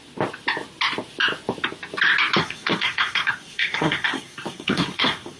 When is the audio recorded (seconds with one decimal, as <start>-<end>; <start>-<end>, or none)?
0.0-2.4